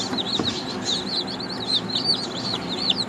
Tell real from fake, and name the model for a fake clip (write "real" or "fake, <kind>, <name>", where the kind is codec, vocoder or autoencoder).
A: real